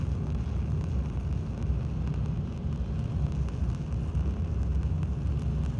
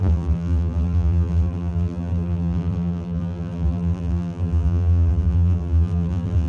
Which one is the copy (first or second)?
second